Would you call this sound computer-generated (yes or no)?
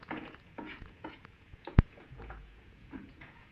yes